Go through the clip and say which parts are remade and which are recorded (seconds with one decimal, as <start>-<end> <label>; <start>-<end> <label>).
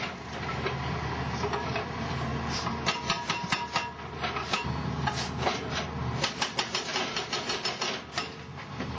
0.0-2.3 remade; 2.3-7.1 recorded; 7.1-9.0 remade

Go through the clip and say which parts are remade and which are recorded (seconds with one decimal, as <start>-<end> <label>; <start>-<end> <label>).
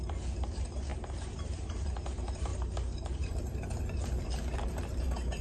0.0-0.9 remade; 0.9-1.4 recorded; 1.4-2.5 remade; 2.5-4.7 recorded; 4.7-5.4 remade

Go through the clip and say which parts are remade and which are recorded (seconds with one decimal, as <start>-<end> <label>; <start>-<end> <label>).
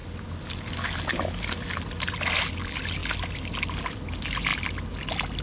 0.0-5.4 recorded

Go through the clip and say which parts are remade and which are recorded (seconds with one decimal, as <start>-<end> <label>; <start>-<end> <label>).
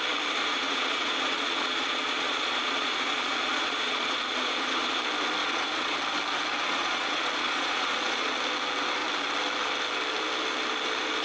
0.0-0.5 recorded; 0.5-5.0 remade; 5.0-5.4 recorded; 5.4-6.0 remade; 6.0-6.6 recorded; 6.6-8.3 remade; 8.3-11.2 recorded